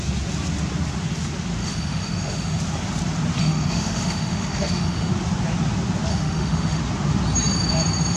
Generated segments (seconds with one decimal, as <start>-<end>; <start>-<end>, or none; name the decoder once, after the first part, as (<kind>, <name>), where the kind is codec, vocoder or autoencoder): 1.6-2.6 (autoencoder, DAC-VAE); 3.4-5.1; 6.1-6.8